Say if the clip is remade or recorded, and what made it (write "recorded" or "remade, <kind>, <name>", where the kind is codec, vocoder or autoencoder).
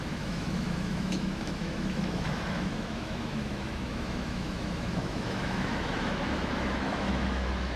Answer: remade, autoencoder, DAC-VAE